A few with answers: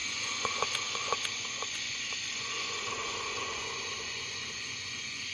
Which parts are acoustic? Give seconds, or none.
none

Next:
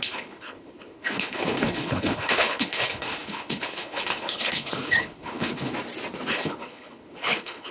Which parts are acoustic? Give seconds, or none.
5.7-6.3

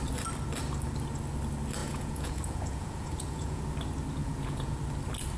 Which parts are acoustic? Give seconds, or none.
0.0-1.8; 3.6-4.2; 4.8-5.4

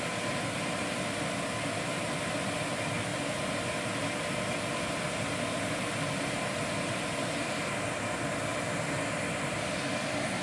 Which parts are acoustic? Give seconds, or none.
0.0-10.4

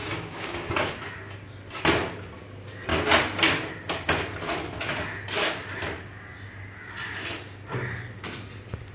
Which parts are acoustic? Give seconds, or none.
1.0-8.9

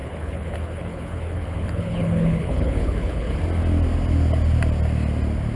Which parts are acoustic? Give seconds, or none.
3.4-5.6

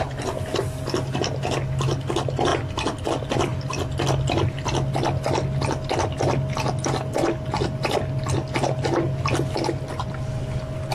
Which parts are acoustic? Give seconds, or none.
0.0-10.9

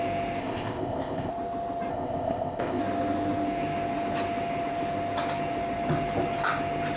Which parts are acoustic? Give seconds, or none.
0.0-0.4; 1.3-1.9; 2.8-7.0